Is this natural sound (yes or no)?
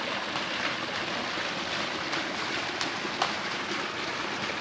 yes